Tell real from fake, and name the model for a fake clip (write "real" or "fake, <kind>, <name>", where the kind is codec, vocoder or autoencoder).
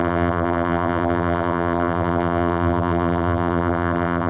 fake, vocoder, BigVGAN v2